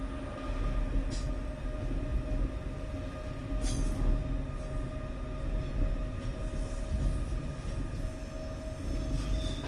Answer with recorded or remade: recorded